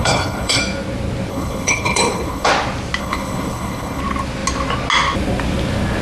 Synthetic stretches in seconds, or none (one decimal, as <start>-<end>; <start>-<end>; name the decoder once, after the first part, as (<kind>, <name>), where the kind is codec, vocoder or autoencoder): 0.0-0.6 (codec, HILCodec); 1.3-2.5; 3.0-4.0